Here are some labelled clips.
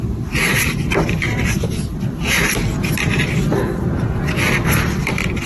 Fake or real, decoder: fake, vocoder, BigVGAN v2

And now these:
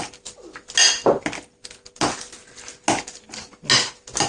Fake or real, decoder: real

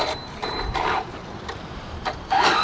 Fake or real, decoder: fake, vocoder, BigVGAN v2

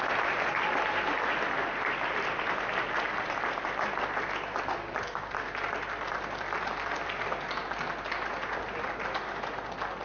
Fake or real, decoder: real